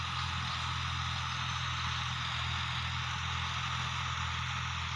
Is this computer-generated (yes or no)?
no